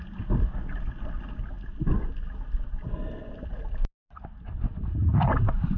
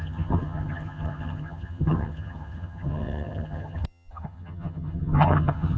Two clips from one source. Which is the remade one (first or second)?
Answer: second